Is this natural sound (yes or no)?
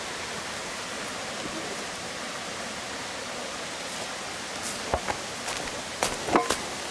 yes